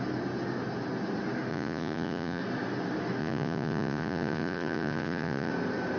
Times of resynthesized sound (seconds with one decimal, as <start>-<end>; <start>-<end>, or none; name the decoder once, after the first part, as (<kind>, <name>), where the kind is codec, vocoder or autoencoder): 1.5-2.4 (vocoder, Vocos); 3.2-5.5